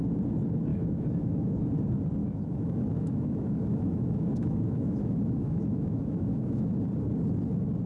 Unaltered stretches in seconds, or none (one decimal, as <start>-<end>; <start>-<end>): 0.0-0.7; 1.6-2.2; 6.7-7.9